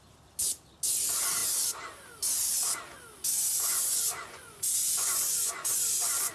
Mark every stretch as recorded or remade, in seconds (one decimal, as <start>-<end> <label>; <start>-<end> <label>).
0.0-3.7 recorded; 3.7-6.3 remade